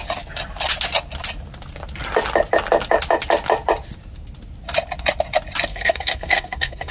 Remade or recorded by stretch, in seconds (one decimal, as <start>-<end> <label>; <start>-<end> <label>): 0.0-5.7 recorded; 5.7-6.9 remade